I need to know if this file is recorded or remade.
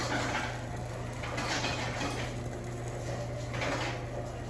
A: recorded